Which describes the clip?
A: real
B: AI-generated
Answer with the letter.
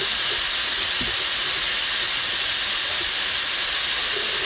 A